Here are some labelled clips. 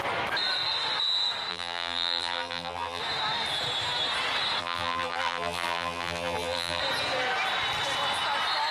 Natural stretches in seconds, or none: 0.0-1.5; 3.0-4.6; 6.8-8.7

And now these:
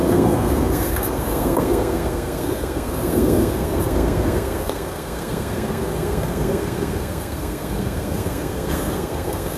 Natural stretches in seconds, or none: none

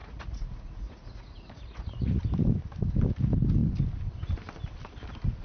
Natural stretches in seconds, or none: 2.2-5.4

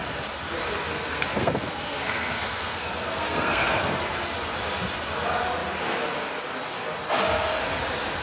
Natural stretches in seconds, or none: 0.0-0.9; 4.0-8.2

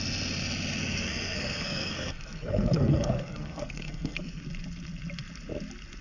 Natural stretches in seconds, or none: 0.0-0.8; 4.4-6.0

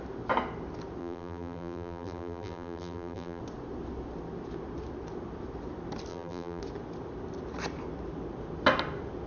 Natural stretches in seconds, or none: 0.0-1.0; 3.4-6.1; 6.6-9.3

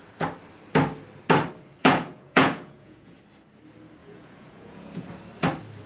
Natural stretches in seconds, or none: 0.0-1.8; 3.2-4.0; 5.1-5.9